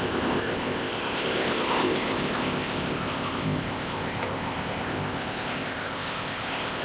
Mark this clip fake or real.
fake